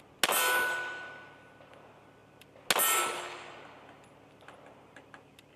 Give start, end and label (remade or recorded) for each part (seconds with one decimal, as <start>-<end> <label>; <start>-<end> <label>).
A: 0.0-5.6 recorded